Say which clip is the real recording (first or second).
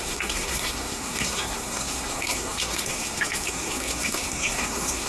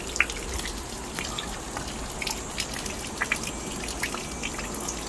second